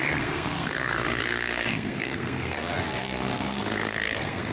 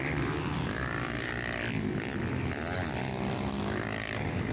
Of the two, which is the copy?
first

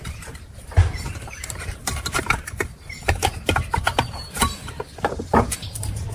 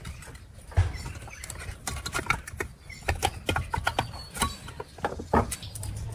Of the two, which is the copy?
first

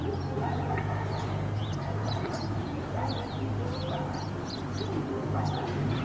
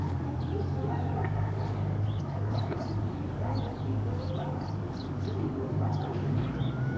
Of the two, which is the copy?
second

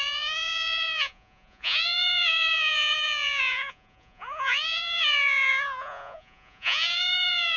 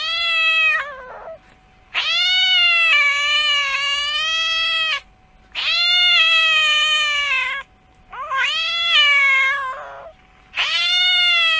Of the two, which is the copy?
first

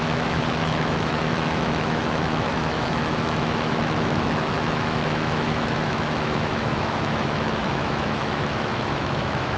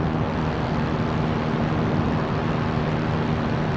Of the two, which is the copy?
first